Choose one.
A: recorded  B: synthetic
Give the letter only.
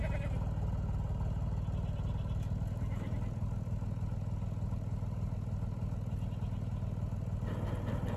A